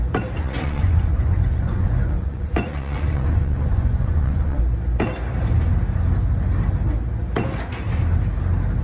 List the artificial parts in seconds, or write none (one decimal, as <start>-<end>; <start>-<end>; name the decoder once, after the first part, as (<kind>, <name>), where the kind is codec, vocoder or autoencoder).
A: 0.4-4.6 (vocoder, Vocos)